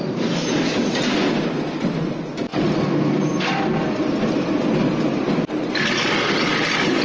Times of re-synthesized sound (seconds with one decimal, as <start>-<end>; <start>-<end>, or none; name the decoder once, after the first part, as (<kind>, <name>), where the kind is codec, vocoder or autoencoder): none